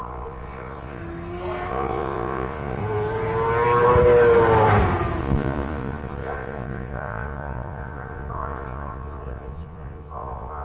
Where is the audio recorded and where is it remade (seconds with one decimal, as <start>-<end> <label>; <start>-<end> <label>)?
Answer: 0.0-1.0 remade; 1.0-1.7 recorded; 1.7-2.8 remade; 2.8-5.2 recorded; 5.2-10.6 remade